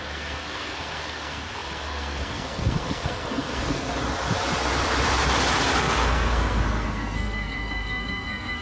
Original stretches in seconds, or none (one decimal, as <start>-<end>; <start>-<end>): 3.9-5.8